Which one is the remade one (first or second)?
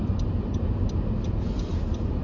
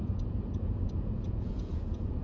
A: second